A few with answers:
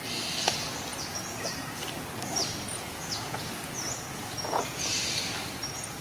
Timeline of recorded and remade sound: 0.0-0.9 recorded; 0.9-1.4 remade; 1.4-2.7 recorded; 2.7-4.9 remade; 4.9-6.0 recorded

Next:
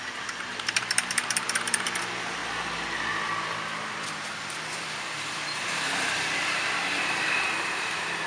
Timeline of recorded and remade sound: 0.0-2.4 remade; 2.4-4.7 recorded; 4.7-8.3 remade

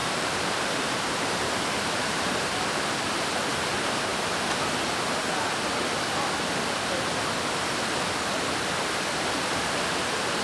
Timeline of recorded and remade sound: 0.0-2.2 remade; 2.2-10.4 recorded

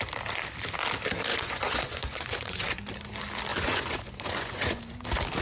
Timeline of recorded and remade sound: 0.0-1.3 recorded; 1.3-2.8 remade; 2.8-3.5 recorded; 3.5-4.8 remade; 4.8-5.4 recorded